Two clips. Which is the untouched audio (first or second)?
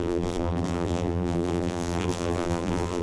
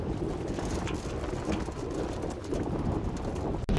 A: second